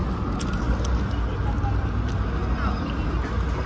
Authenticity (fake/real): real